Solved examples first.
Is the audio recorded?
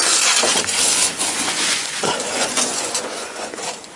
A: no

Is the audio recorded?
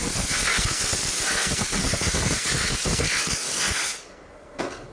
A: no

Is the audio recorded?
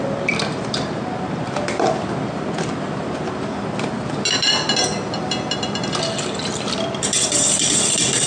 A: no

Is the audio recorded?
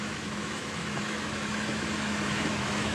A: no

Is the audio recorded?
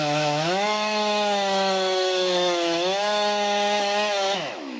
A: no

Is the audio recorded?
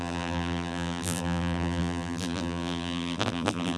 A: no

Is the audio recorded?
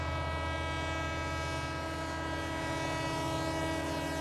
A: yes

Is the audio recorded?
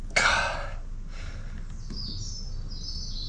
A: yes